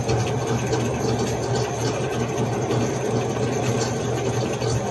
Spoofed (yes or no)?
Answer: no